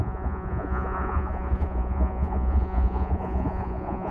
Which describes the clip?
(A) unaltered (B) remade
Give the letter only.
B